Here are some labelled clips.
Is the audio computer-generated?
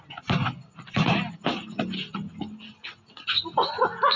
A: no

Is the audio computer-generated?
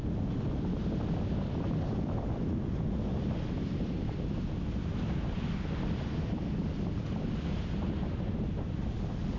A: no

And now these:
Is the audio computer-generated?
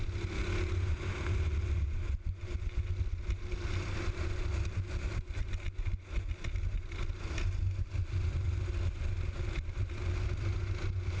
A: no